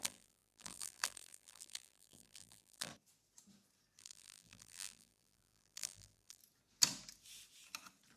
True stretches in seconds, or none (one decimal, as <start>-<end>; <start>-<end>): 2.9-4.0; 6.4-8.2